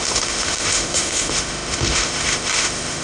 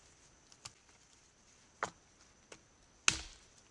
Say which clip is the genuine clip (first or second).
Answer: second